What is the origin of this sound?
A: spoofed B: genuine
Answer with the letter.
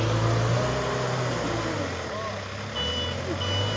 B